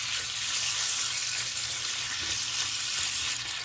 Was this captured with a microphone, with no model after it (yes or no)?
yes